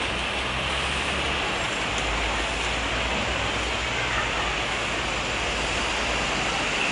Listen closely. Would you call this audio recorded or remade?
recorded